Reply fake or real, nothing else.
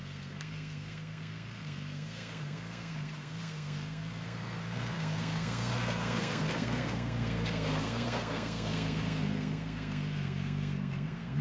fake